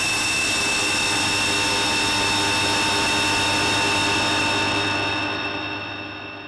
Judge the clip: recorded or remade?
recorded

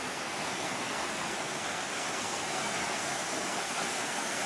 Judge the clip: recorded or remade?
remade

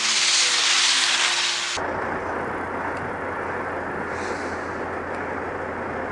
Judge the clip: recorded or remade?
recorded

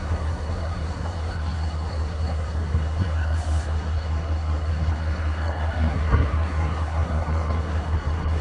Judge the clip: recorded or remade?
remade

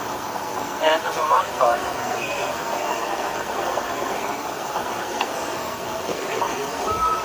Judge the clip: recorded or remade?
remade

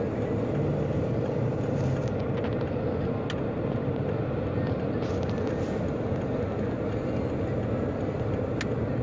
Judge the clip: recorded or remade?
recorded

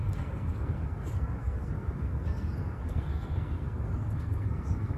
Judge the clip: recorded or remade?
remade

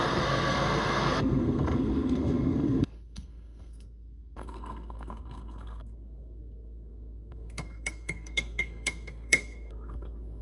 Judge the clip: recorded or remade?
remade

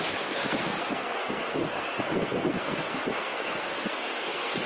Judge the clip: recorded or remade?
remade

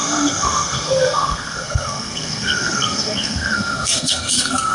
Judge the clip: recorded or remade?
remade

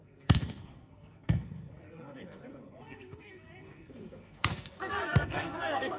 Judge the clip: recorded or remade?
remade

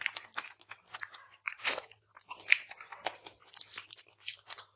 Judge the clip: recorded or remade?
recorded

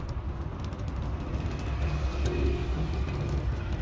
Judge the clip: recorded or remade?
recorded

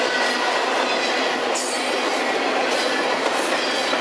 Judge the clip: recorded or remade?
recorded